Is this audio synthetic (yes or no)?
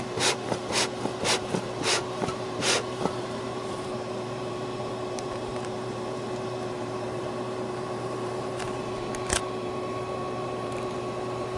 yes